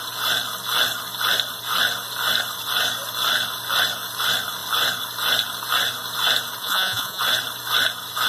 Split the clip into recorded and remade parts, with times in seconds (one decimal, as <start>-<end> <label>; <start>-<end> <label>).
0.0-6.6 recorded; 6.6-7.2 remade; 7.2-8.3 recorded